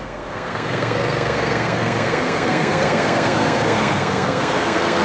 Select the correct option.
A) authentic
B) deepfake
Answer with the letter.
B